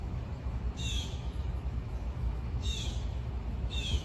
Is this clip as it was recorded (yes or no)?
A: no